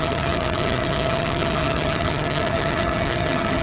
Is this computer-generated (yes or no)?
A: yes